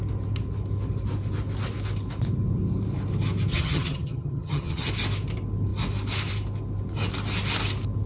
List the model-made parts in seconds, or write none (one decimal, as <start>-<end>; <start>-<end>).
3.5-4.9